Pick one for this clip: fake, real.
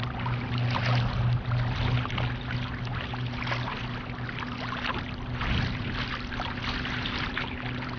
real